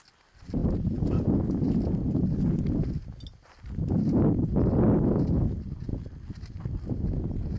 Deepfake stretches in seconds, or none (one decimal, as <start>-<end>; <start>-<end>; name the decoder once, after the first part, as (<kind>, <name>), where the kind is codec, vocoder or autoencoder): none